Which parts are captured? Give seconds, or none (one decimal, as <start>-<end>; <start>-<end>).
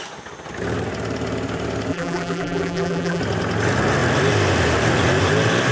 0.0-1.9; 3.2-5.7